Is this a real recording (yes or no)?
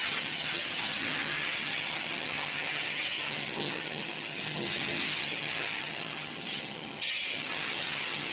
no